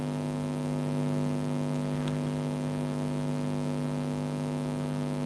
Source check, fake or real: real